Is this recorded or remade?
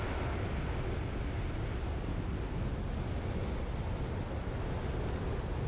recorded